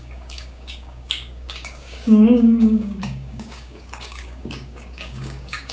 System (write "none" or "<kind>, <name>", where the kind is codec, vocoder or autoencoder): codec, DAC